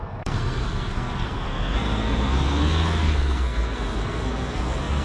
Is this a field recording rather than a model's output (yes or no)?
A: no